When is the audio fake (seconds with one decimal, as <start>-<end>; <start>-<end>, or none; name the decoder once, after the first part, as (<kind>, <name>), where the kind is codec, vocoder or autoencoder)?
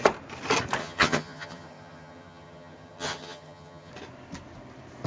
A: 0.8-3.9 (vocoder, HiFi-GAN)